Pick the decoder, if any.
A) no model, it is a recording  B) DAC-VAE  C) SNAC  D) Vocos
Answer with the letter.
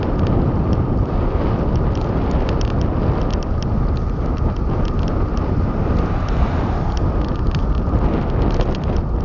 A